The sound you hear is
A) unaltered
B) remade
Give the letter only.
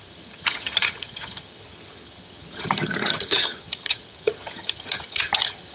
B